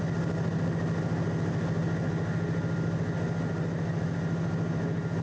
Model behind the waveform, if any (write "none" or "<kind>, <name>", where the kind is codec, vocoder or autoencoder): none